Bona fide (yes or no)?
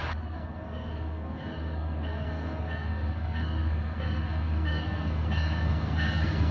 no